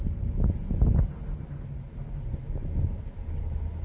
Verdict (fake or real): real